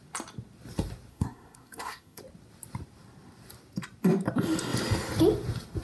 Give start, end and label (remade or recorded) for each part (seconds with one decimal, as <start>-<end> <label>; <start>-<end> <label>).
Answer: 0.0-1.1 recorded; 1.1-2.2 remade; 2.2-5.8 recorded